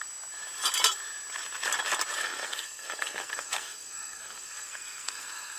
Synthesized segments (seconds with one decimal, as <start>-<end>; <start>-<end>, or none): 2.2-5.6